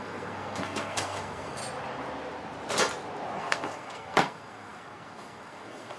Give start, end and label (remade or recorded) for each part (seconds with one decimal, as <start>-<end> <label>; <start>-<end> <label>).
0.0-1.6 remade; 1.6-3.4 recorded; 3.4-6.0 remade